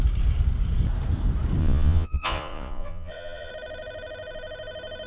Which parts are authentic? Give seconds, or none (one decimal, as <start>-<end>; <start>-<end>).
0.0-1.6; 3.5-5.1